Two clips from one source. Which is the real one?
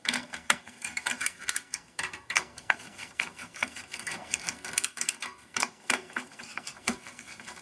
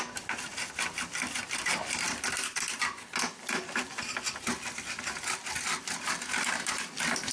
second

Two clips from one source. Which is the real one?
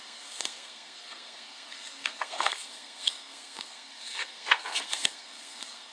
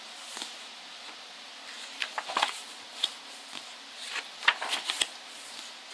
second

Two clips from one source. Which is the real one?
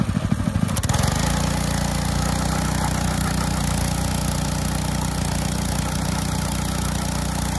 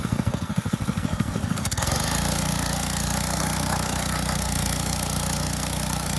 first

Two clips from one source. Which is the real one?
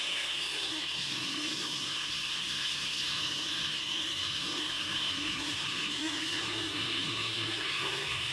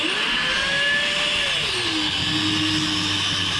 second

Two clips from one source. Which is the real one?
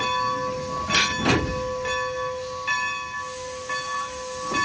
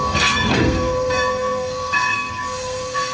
first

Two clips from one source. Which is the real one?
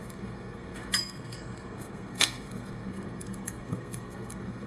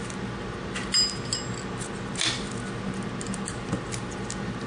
second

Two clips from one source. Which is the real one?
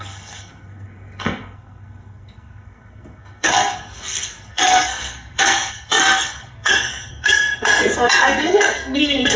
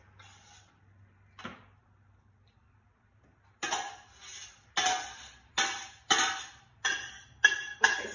second